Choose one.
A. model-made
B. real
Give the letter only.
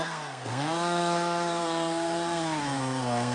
A